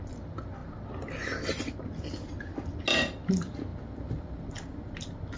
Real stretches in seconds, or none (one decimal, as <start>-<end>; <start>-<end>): 0.0-5.4